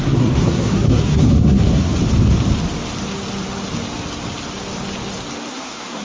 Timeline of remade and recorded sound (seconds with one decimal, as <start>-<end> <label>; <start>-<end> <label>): 0.0-1.9 remade; 1.9-5.5 recorded; 5.5-6.0 remade